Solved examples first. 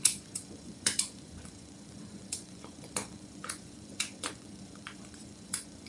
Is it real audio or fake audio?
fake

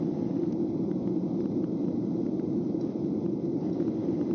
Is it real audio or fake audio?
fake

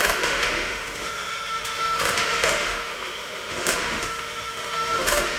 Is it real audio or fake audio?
fake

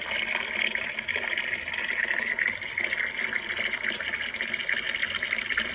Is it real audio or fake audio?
real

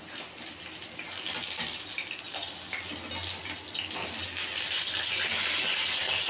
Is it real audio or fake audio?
real